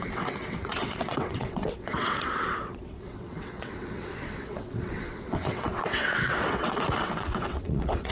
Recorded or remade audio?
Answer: remade